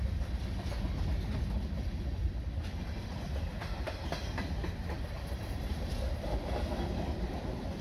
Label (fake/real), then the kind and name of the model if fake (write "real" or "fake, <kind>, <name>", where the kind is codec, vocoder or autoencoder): fake, vocoder, BigVGAN v2